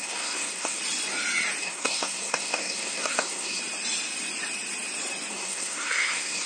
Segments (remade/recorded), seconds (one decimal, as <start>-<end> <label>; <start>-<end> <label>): 0.0-0.8 remade; 0.8-1.6 recorded; 1.6-3.6 remade; 3.6-5.3 recorded; 5.3-6.5 remade